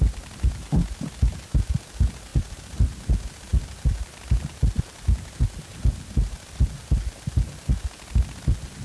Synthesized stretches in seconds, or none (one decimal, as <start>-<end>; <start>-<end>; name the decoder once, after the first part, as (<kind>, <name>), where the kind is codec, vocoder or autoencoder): none